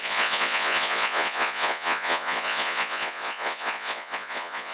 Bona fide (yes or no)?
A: no